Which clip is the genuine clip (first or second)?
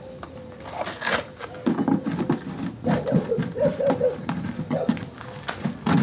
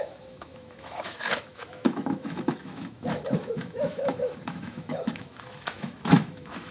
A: first